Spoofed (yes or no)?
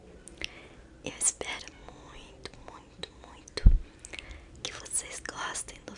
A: no